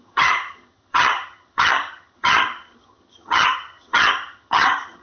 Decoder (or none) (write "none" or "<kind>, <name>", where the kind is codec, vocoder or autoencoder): vocoder, HiFi-GAN